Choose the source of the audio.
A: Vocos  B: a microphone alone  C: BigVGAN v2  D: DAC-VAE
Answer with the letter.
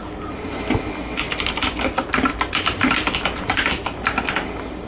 B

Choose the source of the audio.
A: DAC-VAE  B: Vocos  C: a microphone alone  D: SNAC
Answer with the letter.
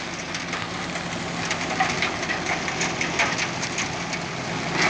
C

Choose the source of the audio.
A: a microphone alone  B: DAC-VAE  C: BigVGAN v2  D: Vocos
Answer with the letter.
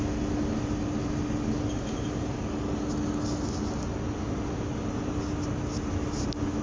A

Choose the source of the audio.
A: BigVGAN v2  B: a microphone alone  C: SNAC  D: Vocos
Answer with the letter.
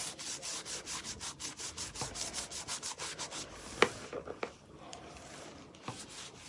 B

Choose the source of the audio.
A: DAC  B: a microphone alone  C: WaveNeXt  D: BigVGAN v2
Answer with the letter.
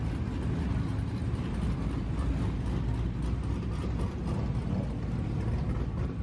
B